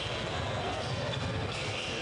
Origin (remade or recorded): remade